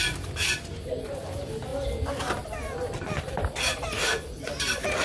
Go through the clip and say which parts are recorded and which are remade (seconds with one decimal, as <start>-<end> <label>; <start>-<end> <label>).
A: 0.0-5.0 recorded